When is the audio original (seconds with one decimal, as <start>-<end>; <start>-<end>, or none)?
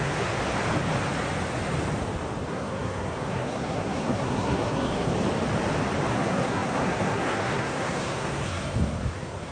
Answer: 0.4-2.5; 5.1-6.1